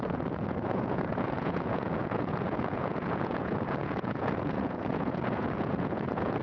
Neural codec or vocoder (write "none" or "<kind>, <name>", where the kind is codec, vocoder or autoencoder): vocoder, Vocos